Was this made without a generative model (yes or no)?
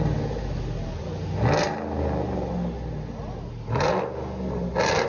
yes